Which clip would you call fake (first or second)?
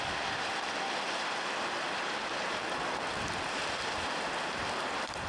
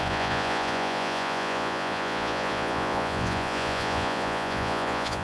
second